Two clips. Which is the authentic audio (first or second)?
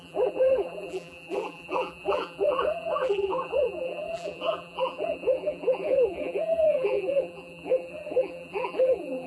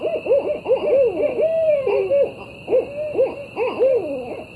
second